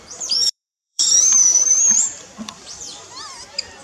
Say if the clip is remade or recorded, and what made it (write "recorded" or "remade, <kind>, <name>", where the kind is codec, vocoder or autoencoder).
remade, vocoder, BigVGAN v2